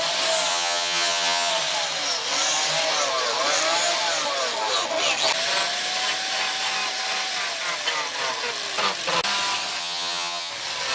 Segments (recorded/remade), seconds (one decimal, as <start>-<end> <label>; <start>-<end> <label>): 0.0-0.5 recorded; 0.5-1.5 remade; 1.5-9.8 recorded; 9.8-10.5 remade; 10.5-10.9 recorded